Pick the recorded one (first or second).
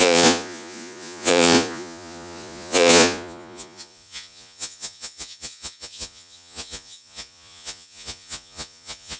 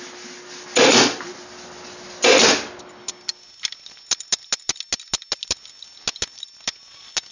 second